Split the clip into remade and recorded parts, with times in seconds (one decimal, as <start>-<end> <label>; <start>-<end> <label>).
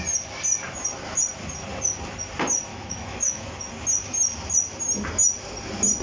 0.0-2.7 recorded; 2.7-3.6 remade; 3.6-6.0 recorded